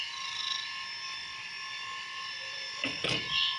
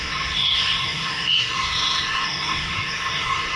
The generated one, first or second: second